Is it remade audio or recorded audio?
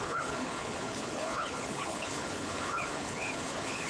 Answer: remade